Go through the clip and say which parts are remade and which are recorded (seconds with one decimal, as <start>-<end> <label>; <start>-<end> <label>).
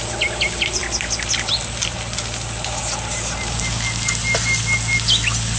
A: 0.0-5.6 recorded